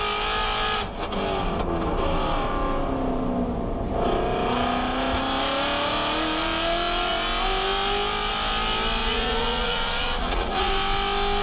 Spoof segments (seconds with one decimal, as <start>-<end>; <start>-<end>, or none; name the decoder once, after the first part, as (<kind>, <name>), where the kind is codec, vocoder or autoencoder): 9.0-10.7 (vocoder, Vocos)